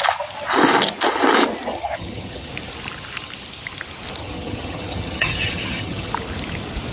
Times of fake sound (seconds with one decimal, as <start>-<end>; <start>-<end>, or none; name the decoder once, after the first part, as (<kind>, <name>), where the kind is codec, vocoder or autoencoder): 1.7-2.5 (vocoder, HiFi-GAN); 4.2-6.1